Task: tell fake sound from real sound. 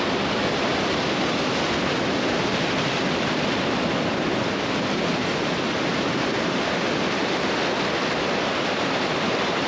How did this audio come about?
real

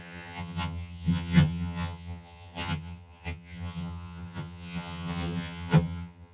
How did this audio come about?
fake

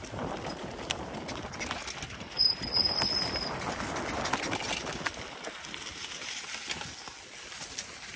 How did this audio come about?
real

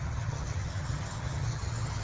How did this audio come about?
fake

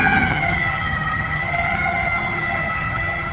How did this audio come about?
fake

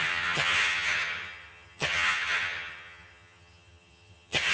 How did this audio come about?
fake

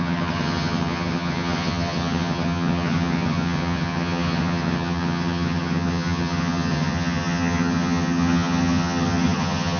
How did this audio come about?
fake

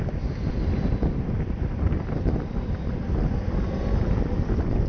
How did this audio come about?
real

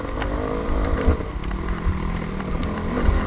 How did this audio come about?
real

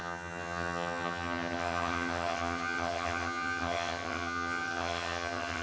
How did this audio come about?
fake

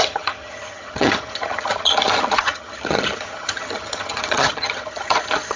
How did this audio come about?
fake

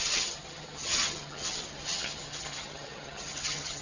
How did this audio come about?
fake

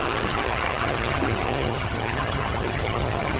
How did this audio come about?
fake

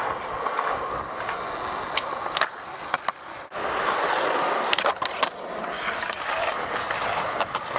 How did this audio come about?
real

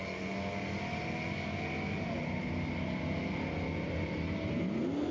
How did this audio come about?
real